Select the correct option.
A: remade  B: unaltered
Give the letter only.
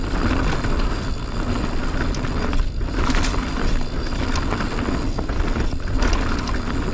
B